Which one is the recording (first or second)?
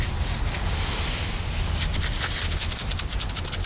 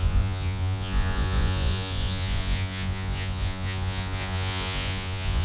first